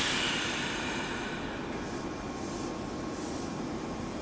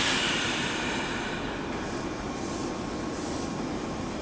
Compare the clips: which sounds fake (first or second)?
second